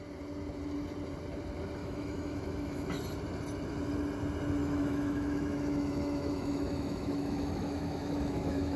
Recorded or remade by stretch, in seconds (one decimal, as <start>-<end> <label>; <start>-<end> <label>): 0.0-1.8 recorded; 1.8-2.9 remade; 2.9-4.6 recorded; 4.6-8.8 remade